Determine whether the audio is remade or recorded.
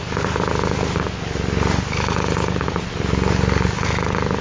recorded